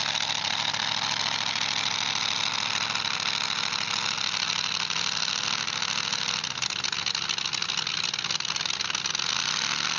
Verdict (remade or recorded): recorded